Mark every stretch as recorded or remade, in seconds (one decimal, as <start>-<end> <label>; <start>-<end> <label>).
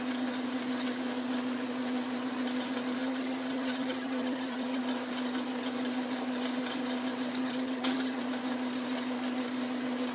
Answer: 0.0-3.0 recorded; 3.0-4.8 remade; 4.8-7.4 recorded; 7.4-8.2 remade; 8.2-10.1 recorded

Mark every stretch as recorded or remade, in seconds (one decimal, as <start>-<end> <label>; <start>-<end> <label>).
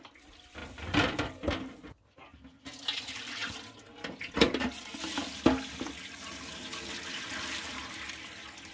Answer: 0.0-8.7 recorded